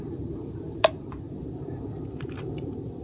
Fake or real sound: fake